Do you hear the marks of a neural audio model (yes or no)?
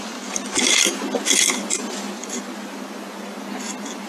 no